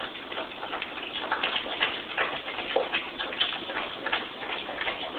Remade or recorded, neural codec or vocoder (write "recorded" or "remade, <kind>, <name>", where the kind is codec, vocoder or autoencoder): recorded